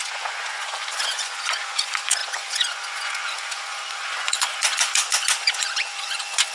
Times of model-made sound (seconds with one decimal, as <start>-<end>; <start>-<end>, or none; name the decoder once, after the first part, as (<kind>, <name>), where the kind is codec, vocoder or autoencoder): 0.0-6.5 (vocoder, Vocos)